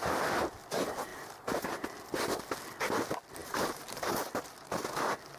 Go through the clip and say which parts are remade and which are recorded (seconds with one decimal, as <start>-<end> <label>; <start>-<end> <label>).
0.0-1.1 recorded; 1.1-2.0 remade; 2.0-3.4 recorded; 3.4-4.1 remade; 4.1-5.4 recorded